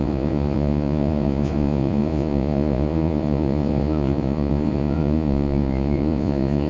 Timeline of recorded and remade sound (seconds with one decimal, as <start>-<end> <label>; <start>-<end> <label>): 0.0-6.7 remade